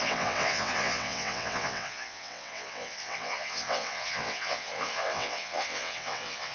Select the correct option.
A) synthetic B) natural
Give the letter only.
A